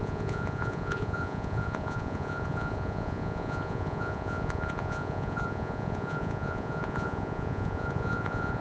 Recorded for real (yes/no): no